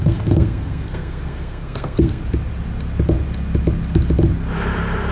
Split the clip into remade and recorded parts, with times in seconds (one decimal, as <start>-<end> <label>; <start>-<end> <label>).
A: 0.0-2.2 remade; 2.2-5.1 recorded